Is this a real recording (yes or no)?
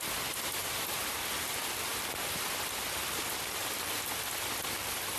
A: yes